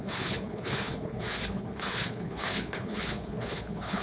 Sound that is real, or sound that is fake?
fake